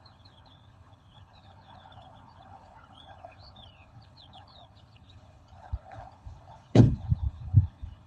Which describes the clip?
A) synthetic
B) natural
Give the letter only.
A